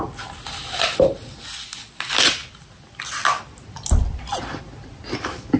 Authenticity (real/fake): real